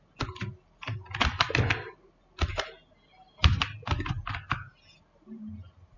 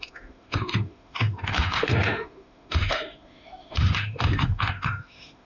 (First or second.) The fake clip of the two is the second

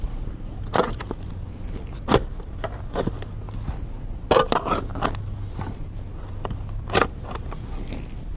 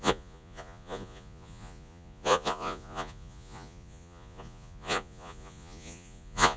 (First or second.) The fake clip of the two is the second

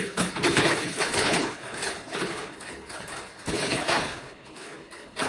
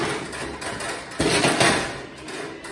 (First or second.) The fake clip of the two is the first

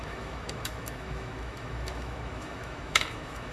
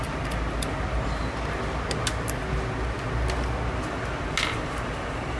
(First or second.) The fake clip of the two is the first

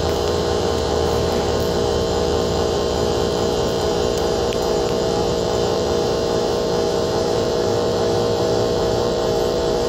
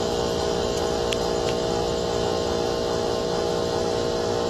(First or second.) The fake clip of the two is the first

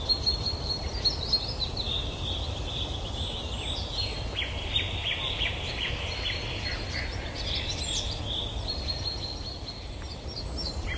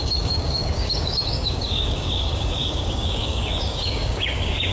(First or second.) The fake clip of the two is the second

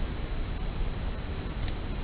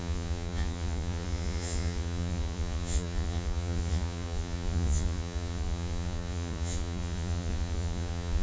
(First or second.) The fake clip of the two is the second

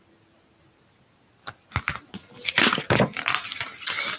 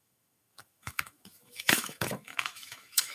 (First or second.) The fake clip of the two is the second